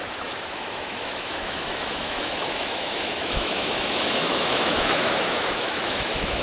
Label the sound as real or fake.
fake